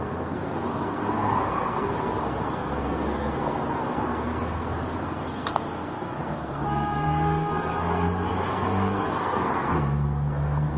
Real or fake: fake